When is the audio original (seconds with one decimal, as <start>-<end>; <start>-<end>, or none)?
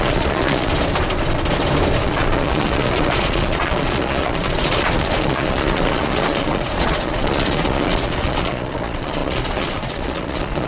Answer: 0.7-2.0